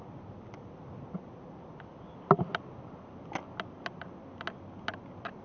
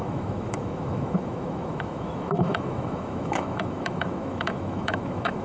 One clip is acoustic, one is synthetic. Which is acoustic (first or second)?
first